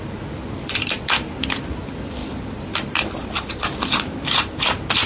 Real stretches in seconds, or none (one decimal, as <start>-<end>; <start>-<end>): 0.0-2.2; 4.6-5.1